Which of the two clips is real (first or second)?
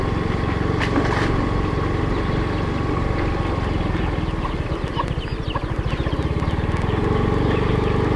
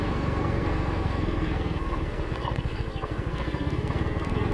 first